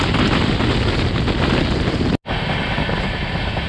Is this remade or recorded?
recorded